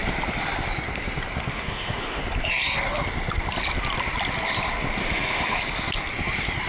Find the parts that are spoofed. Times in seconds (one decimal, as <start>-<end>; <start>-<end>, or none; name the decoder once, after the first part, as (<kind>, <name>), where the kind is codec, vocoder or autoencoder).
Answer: 1.5-2.2 (autoencoder, DAC-VAE); 5.0-5.6